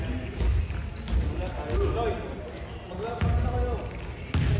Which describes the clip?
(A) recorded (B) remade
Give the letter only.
A